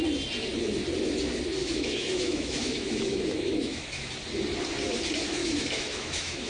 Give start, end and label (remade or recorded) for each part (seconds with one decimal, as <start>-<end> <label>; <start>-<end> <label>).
0.0-1.6 recorded; 1.6-4.1 remade; 4.1-5.4 recorded; 5.4-6.5 remade